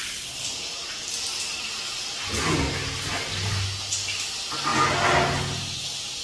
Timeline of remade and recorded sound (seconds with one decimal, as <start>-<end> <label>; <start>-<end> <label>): 0.0-6.2 recorded